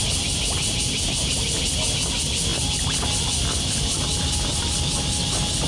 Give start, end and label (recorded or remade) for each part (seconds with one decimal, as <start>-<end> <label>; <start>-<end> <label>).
0.0-5.7 recorded